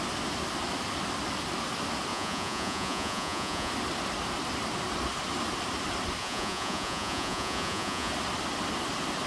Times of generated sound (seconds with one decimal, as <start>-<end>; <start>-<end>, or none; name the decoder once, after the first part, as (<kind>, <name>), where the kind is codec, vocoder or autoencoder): 2.1-3.7 (vocoder, Vocos); 6.2-8.1